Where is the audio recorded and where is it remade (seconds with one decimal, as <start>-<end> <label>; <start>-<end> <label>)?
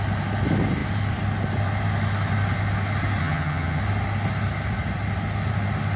0.0-3.2 recorded; 3.2-3.8 remade; 3.8-6.0 recorded